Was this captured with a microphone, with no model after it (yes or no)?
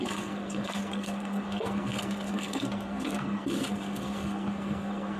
no